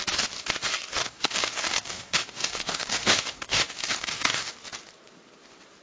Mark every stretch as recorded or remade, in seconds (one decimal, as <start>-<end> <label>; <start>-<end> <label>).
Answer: 0.0-1.0 recorded; 1.0-4.5 remade; 4.5-5.8 recorded